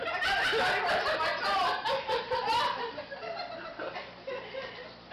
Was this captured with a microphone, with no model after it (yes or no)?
no